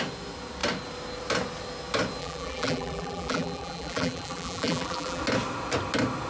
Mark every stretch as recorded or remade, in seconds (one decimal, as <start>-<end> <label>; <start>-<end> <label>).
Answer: 0.0-2.2 recorded; 2.2-5.2 remade; 5.2-6.3 recorded